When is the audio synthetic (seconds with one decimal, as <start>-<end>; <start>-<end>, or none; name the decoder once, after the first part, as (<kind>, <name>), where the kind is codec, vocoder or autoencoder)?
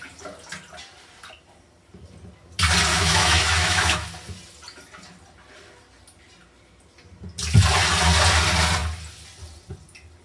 2.9-4.1 (autoencoder, DAC-VAE)